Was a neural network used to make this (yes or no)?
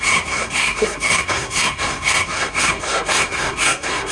yes